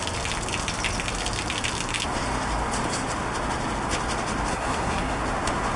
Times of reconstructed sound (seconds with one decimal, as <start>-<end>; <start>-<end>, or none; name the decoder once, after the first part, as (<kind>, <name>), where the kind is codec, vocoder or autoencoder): 4.5-5.2 (codec, SNAC)